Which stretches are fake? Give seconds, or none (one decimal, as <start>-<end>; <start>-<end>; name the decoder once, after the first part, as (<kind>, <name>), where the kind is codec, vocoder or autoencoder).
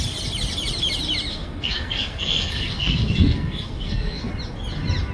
1.3-4.3 (codec, SNAC)